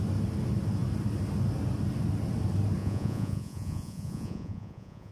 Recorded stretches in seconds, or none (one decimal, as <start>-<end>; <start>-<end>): 0.0-2.8